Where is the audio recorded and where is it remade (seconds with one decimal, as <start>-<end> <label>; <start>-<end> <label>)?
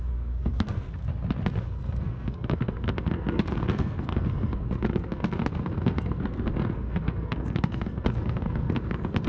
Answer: 0.0-1.0 remade; 1.0-1.6 recorded; 1.6-9.3 remade